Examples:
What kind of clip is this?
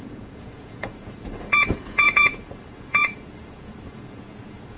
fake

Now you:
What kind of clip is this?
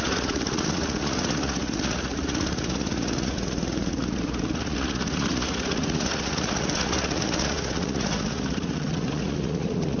fake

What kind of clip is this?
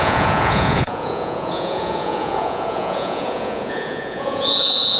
fake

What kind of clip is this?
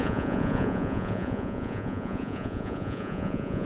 fake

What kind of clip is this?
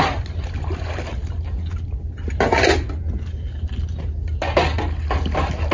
real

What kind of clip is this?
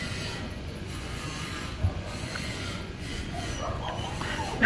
fake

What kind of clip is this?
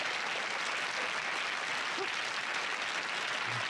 real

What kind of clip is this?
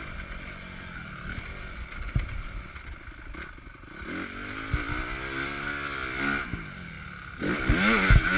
real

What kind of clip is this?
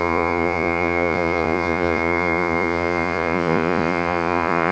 fake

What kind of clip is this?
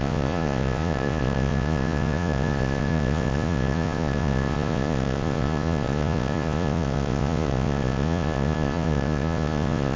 fake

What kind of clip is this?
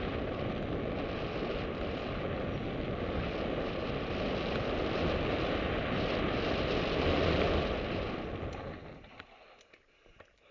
real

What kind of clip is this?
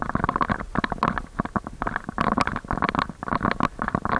real